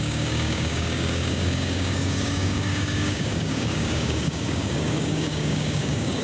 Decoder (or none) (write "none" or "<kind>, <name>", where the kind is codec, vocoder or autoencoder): codec, DAC